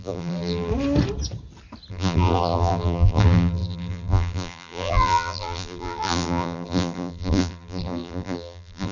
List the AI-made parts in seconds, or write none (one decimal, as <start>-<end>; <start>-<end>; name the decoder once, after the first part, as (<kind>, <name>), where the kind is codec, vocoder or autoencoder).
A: 0.0-0.7 (vocoder, BigVGAN v2); 1.9-8.9